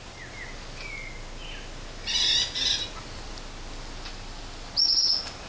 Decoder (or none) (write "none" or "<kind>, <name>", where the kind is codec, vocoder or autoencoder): none